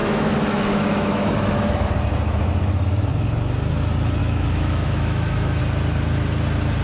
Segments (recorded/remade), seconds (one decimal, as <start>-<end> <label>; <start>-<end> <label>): 0.0-1.9 remade; 1.9-4.2 recorded; 4.2-5.6 remade; 5.6-6.8 recorded